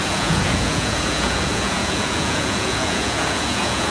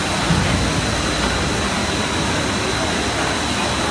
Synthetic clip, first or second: first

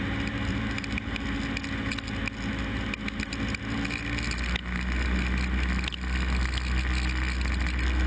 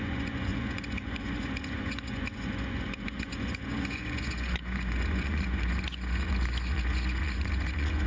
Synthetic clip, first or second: second